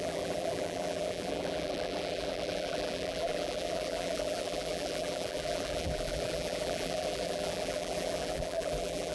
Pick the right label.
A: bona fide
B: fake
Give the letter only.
B